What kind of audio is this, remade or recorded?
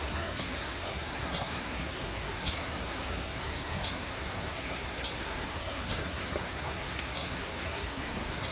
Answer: remade